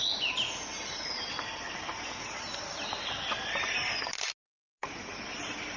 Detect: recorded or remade recorded